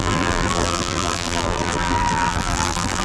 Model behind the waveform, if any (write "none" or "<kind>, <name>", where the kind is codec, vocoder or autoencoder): vocoder, BigVGAN v2